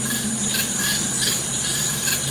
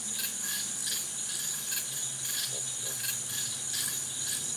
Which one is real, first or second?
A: second